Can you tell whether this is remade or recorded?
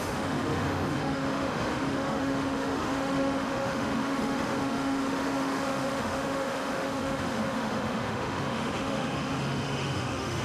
remade